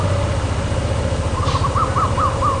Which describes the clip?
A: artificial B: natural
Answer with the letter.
A